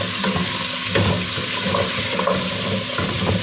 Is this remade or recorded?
recorded